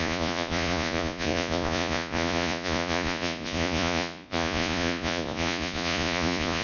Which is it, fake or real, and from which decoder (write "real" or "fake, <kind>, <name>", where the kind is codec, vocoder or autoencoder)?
fake, vocoder, Vocos